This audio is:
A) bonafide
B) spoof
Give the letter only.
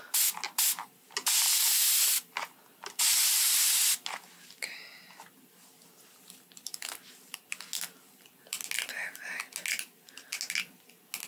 A